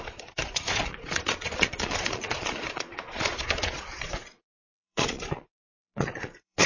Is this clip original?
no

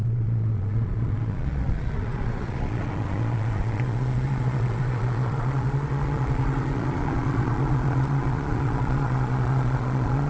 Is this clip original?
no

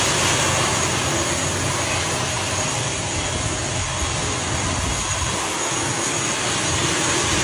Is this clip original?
yes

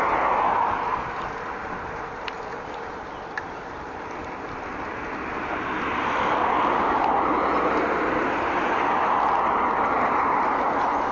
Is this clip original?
yes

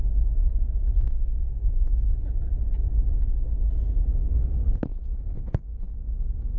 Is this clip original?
yes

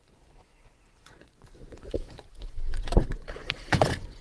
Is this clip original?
no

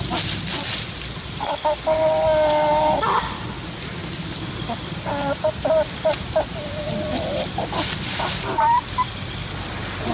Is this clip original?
yes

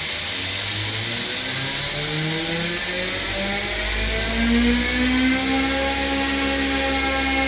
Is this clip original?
yes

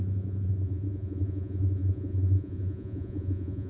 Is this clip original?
no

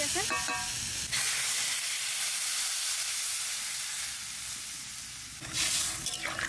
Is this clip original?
yes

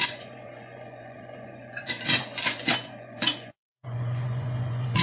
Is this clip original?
no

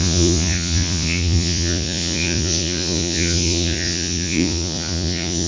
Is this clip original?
no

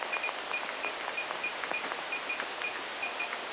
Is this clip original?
yes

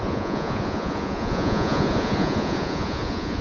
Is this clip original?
no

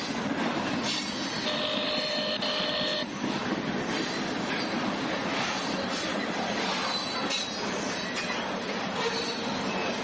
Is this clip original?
yes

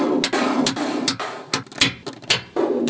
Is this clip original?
yes